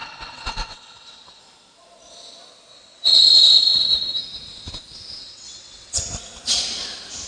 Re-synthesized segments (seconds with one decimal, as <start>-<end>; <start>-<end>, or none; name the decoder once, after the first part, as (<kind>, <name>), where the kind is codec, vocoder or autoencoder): 0.0-1.4 (vocoder, WaveNeXt); 2.7-4.2; 5.2-6.0